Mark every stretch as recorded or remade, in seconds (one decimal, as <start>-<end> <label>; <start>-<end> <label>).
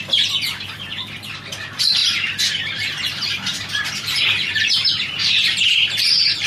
0.0-2.0 remade; 2.0-2.6 recorded; 2.6-6.5 remade